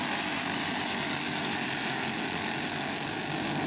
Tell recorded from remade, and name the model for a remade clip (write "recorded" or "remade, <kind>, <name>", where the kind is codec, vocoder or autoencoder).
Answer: recorded